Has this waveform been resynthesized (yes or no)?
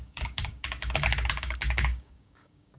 yes